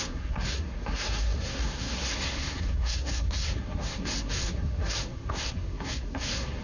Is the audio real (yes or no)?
no